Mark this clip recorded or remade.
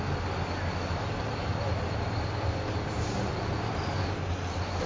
recorded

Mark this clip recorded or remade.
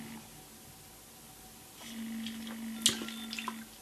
recorded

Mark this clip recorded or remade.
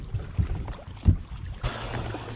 recorded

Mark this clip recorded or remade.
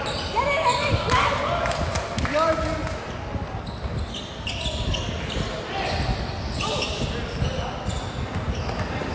recorded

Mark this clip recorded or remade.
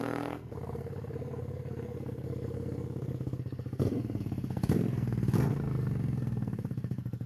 remade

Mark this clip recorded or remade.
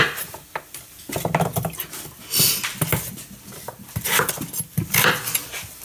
recorded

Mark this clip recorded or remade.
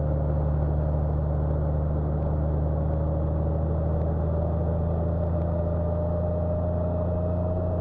recorded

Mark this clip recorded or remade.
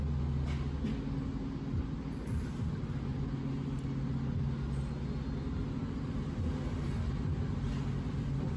recorded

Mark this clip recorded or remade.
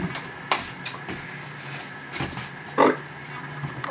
recorded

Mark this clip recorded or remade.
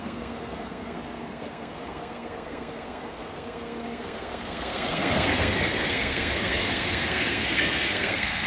remade